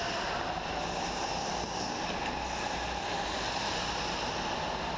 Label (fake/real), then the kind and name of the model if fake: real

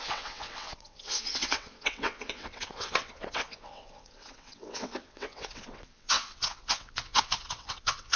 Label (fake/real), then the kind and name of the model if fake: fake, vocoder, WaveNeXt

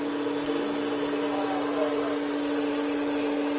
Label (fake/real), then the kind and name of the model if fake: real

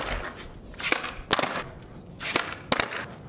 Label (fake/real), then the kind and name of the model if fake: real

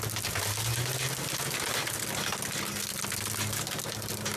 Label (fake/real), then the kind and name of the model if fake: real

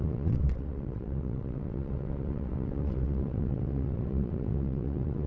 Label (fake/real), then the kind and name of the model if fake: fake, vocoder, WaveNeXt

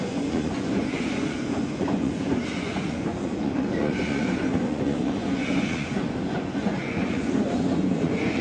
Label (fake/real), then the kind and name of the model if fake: fake, vocoder, Vocos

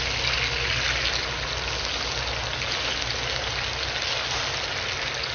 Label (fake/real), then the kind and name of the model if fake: real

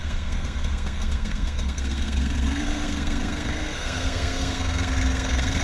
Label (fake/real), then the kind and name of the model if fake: fake, codec, SNAC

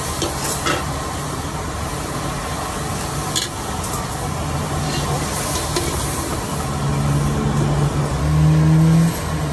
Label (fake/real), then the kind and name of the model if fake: real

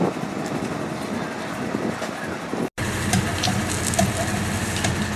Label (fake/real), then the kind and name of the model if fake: real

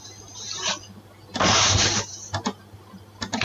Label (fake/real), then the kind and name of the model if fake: real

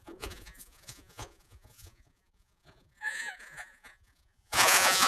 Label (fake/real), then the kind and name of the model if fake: fake, vocoder, Vocos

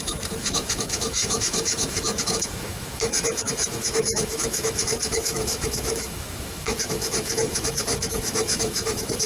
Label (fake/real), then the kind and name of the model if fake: fake, autoencoder, DAC-VAE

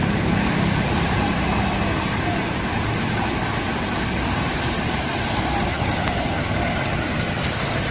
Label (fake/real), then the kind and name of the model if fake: real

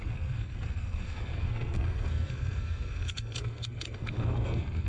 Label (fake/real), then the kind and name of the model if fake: fake, codec, SNAC